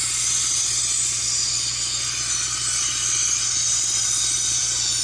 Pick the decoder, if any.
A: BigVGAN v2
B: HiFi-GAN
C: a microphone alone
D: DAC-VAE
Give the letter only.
C